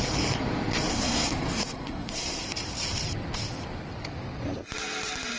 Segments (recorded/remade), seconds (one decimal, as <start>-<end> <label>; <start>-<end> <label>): 0.0-0.9 recorded; 0.9-2.4 remade; 2.4-5.4 recorded